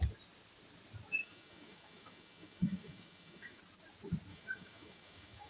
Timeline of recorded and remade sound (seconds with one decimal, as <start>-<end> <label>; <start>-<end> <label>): 0.0-1.2 recorded; 1.2-3.6 remade; 3.6-4.3 recorded; 4.3-5.5 remade